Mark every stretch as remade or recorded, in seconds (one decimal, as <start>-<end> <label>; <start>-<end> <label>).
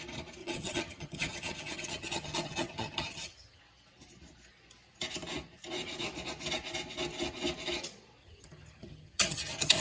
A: 0.0-0.4 recorded; 0.4-3.6 remade; 3.6-8.2 recorded; 8.2-9.8 remade